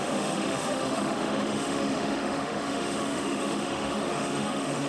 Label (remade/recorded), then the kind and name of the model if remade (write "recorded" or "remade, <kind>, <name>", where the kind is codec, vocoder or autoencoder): remade, autoencoder, DAC-VAE